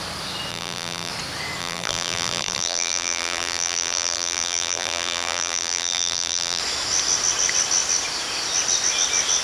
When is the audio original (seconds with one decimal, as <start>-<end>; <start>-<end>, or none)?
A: 0.0-0.5; 1.1-1.6; 6.6-9.4